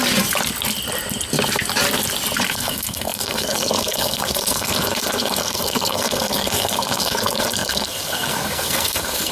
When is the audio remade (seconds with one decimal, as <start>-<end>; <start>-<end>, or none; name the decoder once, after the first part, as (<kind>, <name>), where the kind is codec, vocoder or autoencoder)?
2.5-9.3 (codec, SNAC)